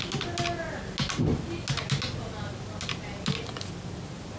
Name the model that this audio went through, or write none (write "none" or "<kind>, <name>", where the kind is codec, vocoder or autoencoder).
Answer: none